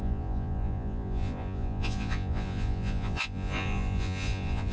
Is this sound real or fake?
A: fake